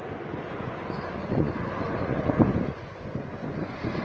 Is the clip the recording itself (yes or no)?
no